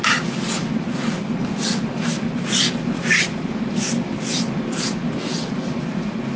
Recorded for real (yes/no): yes